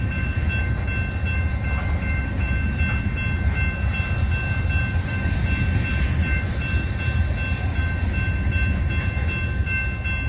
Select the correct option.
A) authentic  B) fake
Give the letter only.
A